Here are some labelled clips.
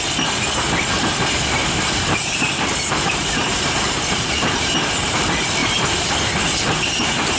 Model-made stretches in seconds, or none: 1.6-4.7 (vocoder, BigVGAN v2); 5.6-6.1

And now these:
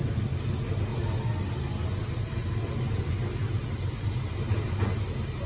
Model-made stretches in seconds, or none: none